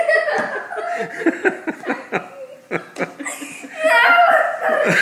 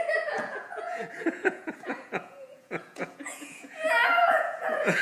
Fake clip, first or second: second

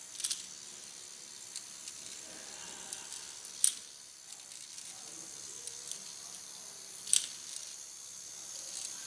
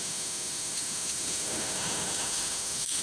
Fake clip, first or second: second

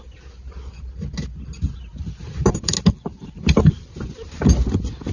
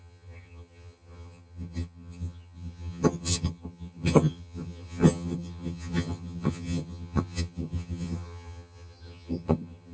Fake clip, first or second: second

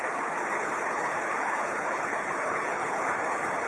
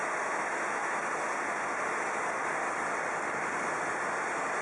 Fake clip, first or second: first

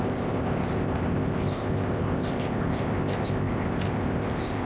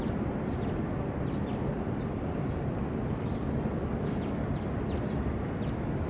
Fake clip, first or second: first